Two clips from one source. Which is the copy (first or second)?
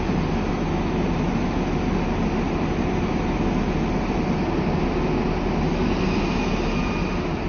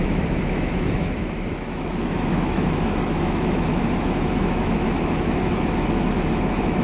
second